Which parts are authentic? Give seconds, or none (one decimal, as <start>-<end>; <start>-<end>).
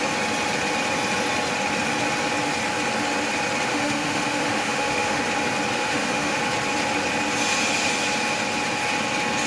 0.0-3.7; 5.2-5.8; 6.4-9.5